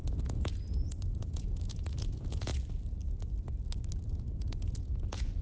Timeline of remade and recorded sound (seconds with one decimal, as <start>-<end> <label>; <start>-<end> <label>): 0.0-2.5 remade; 2.5-4.1 recorded; 4.1-5.4 remade